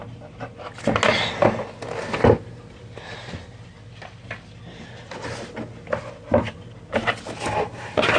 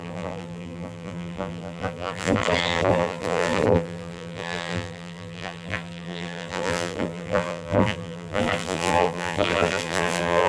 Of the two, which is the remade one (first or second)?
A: second